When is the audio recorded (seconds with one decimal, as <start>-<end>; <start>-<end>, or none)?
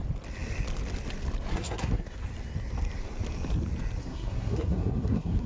0.0-1.5; 2.2-4.0